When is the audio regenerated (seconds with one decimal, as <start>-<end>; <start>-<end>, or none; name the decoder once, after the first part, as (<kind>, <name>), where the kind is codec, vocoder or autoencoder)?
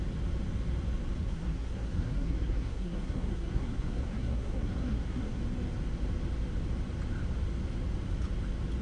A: 1.2-5.4 (codec, SNAC)